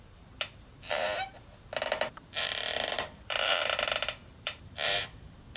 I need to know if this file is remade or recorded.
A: remade